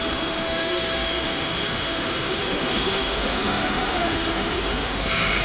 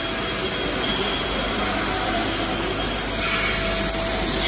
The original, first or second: second